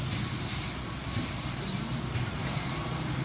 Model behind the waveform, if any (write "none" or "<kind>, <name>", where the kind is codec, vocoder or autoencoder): vocoder, BigVGAN v2